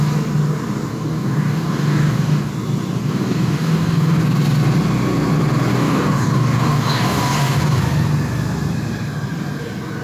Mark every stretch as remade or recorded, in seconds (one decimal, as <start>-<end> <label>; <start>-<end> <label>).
0.0-0.9 recorded; 0.9-2.5 remade; 2.5-3.0 recorded; 3.0-4.2 remade; 4.2-5.7 recorded; 5.7-7.8 remade; 7.8-10.0 recorded